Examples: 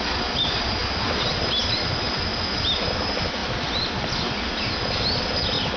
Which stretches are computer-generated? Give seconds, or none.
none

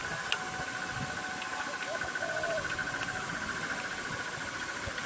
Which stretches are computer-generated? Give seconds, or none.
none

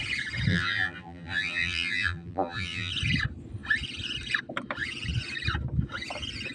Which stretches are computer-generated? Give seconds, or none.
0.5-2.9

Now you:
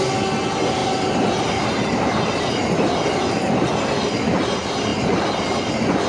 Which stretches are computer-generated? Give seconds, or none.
none